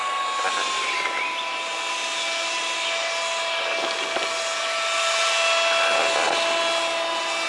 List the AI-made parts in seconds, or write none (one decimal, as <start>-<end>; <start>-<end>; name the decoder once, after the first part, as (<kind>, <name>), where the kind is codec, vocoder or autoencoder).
none